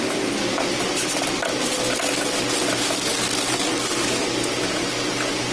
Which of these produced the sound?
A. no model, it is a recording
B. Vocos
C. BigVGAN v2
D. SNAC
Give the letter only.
A